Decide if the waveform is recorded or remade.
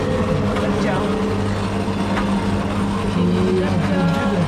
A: recorded